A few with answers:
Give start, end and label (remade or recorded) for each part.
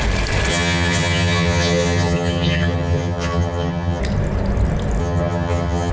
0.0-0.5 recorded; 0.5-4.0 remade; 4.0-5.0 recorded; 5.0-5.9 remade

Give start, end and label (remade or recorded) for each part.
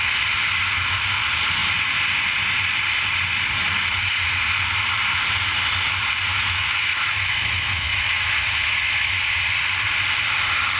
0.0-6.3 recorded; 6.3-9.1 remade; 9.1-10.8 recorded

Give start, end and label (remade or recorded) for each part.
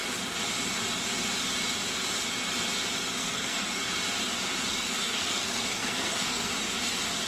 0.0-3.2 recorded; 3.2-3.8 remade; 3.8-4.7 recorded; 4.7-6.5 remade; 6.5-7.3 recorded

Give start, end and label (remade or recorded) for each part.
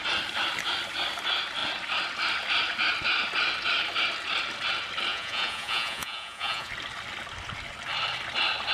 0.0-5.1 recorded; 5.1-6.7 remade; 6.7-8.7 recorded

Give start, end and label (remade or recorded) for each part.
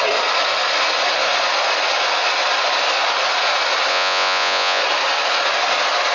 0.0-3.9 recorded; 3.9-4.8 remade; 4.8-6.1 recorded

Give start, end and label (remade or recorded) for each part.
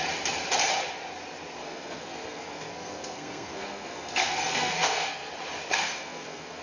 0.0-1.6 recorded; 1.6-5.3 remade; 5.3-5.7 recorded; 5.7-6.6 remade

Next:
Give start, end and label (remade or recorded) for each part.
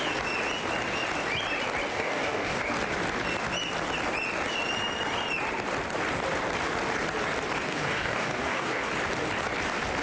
0.0-1.9 recorded; 1.9-2.6 remade; 2.6-7.7 recorded; 7.7-8.9 remade; 8.9-10.0 recorded